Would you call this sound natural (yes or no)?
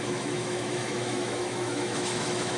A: no